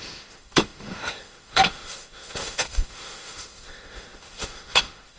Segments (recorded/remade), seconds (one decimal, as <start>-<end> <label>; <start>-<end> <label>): 0.0-5.2 remade